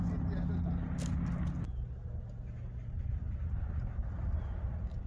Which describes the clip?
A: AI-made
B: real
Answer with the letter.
B